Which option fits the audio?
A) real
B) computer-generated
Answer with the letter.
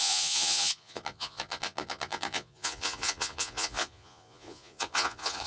B